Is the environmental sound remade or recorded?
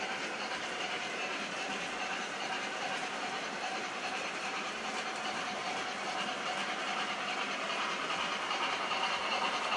remade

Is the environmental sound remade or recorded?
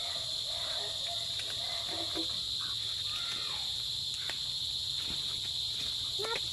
recorded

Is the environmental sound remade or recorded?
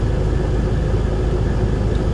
recorded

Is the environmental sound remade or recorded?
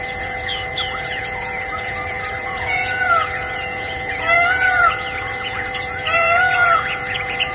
remade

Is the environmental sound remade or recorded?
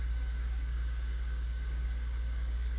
remade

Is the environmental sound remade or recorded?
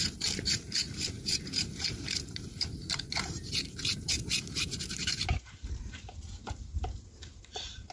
remade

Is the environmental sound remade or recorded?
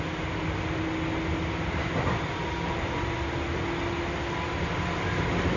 recorded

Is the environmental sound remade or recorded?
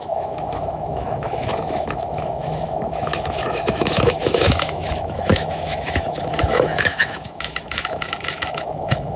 remade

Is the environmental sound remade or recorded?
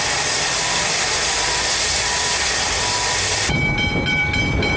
remade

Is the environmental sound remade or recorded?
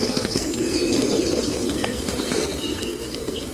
remade